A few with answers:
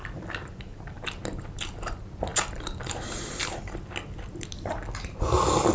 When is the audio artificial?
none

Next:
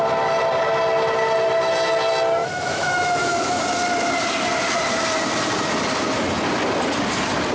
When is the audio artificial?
2.4-3.6

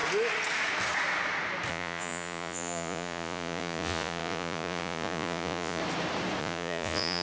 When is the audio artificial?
1.7-5.8; 6.4-7.2

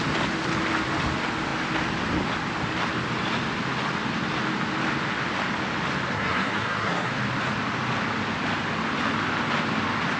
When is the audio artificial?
6.1-7.1